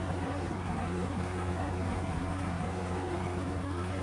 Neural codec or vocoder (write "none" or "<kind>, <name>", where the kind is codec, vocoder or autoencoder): codec, SNAC